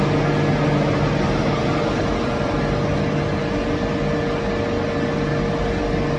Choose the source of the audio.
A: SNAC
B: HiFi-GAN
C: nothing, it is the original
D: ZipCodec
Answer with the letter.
C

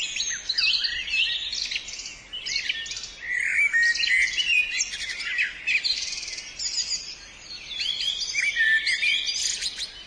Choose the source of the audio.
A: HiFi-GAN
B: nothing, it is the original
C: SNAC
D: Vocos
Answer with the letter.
B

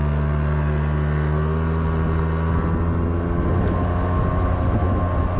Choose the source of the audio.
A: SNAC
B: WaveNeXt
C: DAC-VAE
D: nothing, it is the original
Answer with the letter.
D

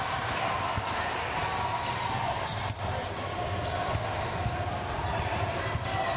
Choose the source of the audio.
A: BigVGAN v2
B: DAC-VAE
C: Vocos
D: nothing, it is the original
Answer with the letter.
D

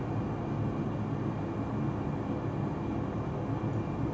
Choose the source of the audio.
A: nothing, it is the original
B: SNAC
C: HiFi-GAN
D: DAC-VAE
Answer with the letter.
A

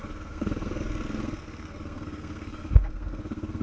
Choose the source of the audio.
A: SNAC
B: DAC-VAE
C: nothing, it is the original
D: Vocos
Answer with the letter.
A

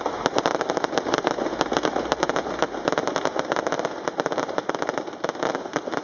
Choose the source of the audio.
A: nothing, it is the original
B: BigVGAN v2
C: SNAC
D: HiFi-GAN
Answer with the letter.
A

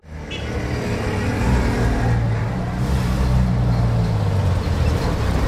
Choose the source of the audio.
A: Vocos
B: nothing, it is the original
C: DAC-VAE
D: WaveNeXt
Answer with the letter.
B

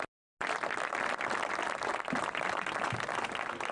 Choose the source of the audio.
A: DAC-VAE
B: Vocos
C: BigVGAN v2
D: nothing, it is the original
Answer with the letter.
D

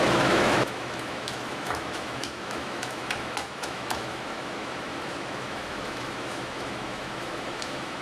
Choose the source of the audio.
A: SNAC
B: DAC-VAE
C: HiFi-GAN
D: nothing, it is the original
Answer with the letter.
B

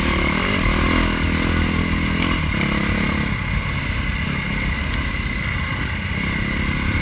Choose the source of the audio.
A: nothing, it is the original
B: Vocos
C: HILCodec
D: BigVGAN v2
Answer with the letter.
A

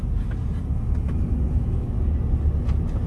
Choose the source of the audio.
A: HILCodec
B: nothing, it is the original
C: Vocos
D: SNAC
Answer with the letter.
B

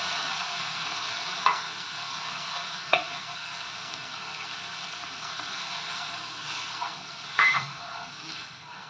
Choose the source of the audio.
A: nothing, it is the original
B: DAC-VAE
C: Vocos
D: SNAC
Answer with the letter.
D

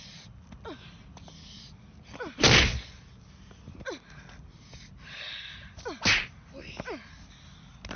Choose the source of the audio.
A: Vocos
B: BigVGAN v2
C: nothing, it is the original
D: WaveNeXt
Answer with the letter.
C